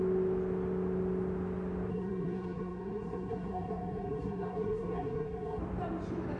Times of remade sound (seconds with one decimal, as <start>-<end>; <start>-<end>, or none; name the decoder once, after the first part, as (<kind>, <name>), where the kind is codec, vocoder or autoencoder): 1.9-5.6 (codec, SNAC)